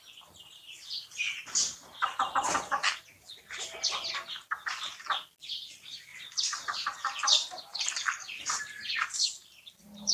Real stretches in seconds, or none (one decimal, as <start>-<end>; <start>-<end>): 0.0-6.1; 8.9-10.1